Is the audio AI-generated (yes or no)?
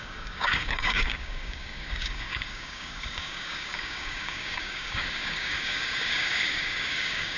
yes